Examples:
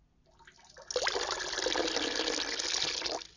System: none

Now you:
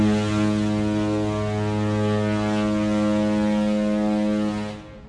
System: none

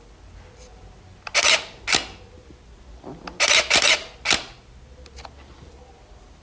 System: none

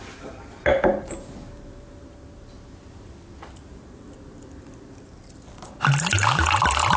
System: none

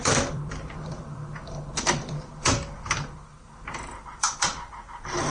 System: vocoder, BigVGAN v2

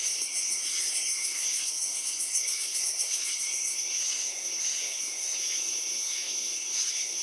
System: codec, SNAC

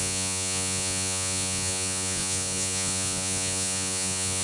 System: vocoder, Vocos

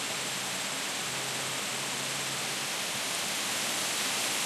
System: none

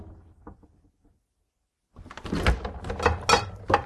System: none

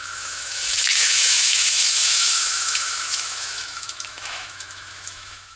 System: autoencoder, DAC-VAE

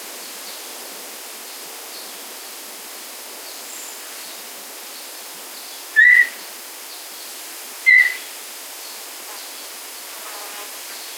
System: none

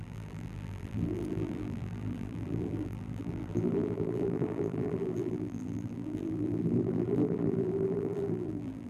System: vocoder, BigVGAN v2